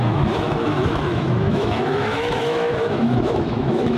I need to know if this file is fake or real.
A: fake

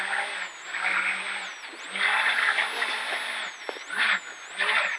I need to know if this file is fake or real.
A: real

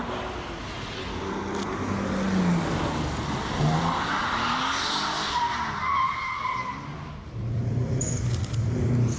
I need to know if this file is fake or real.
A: real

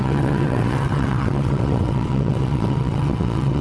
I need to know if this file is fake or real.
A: fake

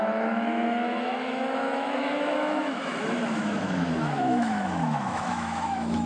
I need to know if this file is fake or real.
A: fake